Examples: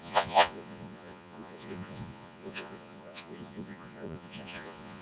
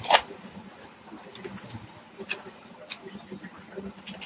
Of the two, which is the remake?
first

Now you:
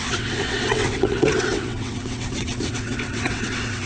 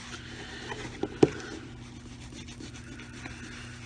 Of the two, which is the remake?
first